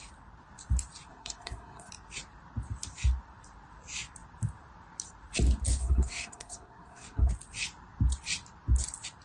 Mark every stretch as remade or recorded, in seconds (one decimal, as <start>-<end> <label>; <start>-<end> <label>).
0.0-1.1 recorded; 1.1-1.9 remade; 1.9-5.8 recorded; 5.8-7.3 remade; 7.3-9.2 recorded